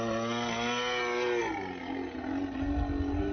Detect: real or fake real